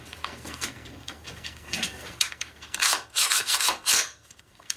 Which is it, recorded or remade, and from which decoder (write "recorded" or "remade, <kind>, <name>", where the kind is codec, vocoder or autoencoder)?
remade, codec, SNAC